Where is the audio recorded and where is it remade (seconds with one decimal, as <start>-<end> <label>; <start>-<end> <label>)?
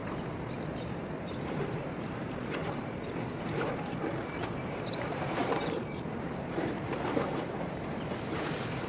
0.0-0.7 recorded; 0.7-2.6 remade; 2.6-4.6 recorded; 4.6-8.9 remade